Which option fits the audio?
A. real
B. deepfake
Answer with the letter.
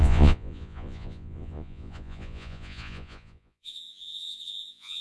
B